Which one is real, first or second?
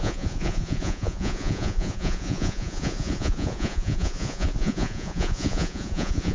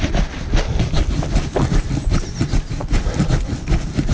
second